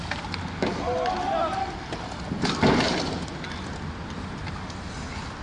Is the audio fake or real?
real